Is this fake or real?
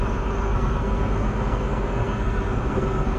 fake